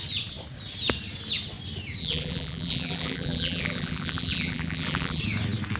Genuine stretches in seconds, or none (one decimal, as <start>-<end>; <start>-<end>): 0.0-2.0; 5.2-5.8